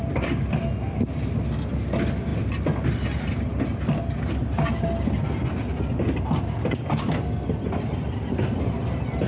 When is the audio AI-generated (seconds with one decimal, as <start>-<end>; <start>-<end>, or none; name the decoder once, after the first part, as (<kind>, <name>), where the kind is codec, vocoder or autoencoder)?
none